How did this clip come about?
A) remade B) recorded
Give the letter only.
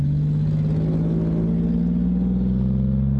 B